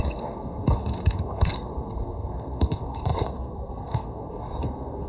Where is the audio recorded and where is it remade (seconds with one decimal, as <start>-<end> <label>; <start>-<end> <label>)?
0.0-5.1 remade